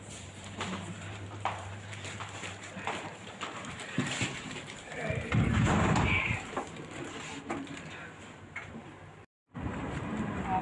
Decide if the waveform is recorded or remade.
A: remade